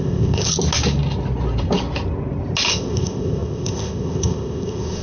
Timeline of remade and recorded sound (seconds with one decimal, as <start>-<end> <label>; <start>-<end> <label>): 0.0-0.5 remade; 0.5-2.7 recorded; 2.7-5.0 remade